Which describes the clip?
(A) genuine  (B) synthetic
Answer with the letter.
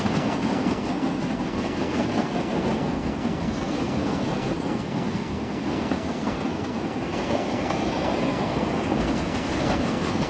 B